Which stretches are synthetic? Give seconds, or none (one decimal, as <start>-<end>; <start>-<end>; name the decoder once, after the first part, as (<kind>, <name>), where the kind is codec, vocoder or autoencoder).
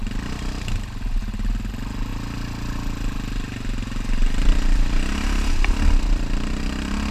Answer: none